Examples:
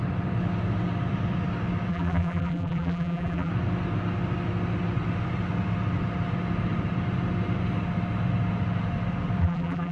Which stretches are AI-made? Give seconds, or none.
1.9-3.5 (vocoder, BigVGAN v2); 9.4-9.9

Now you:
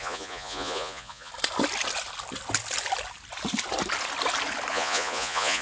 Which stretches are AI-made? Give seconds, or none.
0.0-1.3 (vocoder, Vocos); 4.7-5.6

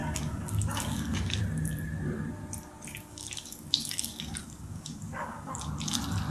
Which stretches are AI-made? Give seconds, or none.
0.0-1.4 (codec, DAC); 2.9-5.5